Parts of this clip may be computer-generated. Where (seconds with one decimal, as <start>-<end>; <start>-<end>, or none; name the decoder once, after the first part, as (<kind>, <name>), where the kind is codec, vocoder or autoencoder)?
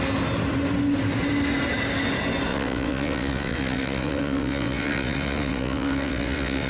2.5-6.7 (vocoder, WaveNeXt)